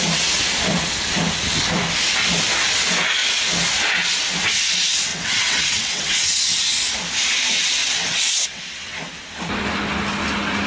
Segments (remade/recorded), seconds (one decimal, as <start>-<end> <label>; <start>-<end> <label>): 0.0-5.1 recorded; 5.1-6.5 remade; 6.5-7.8 recorded; 7.8-8.6 remade; 8.6-10.7 recorded